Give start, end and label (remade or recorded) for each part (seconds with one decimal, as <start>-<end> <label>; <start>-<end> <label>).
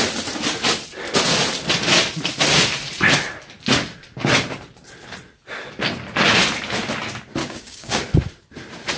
0.0-7.4 recorded; 7.4-8.0 remade; 8.0-9.0 recorded